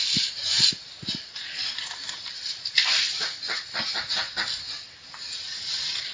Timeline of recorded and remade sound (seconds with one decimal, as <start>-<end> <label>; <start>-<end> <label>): 0.0-1.0 recorded; 1.0-3.2 remade; 3.2-6.1 recorded